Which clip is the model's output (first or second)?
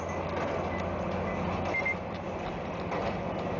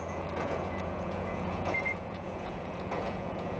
second